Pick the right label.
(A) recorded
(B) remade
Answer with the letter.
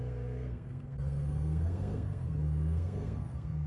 B